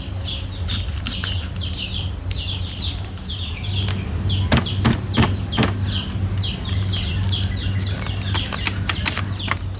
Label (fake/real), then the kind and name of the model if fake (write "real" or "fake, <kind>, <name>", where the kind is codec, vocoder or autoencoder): real